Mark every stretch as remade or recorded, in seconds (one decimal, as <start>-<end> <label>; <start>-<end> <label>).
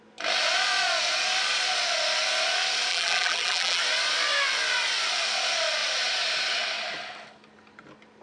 0.0-2.9 recorded; 2.9-3.8 remade; 3.8-8.2 recorded